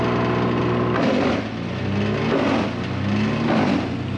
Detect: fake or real real